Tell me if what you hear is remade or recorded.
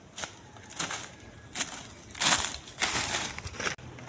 recorded